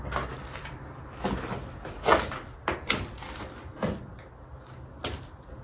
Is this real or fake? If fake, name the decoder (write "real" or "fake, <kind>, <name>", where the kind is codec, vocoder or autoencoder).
real